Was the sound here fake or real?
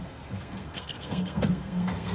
fake